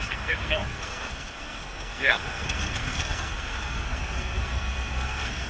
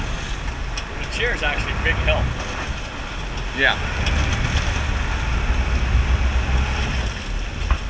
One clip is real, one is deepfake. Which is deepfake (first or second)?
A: first